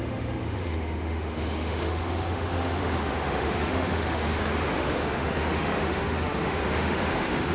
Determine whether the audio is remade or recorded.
remade